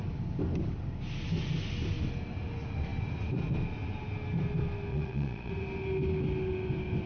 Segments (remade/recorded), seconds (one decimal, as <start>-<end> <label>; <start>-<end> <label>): 0.0-4.9 recorded; 4.9-5.5 remade; 5.5-7.1 recorded